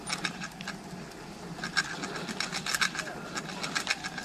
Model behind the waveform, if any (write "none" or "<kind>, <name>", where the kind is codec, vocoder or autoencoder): none